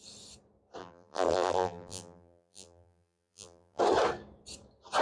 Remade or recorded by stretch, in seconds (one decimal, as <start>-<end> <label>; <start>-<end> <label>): 0.0-0.8 recorded; 0.8-3.8 remade; 3.8-5.0 recorded